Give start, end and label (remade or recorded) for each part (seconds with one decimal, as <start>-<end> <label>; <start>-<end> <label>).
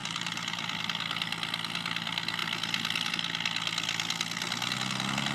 0.0-0.8 remade; 0.8-5.3 recorded